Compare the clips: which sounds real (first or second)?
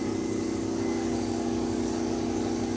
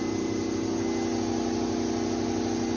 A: second